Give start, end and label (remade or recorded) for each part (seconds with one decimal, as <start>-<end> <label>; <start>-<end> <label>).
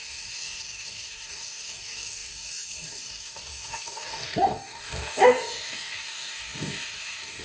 0.0-7.4 remade